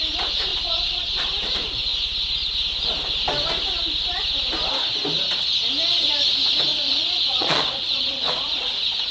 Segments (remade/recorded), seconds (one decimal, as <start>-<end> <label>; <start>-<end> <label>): 0.0-0.5 recorded; 0.5-1.2 remade; 1.2-6.7 recorded; 6.7-9.1 remade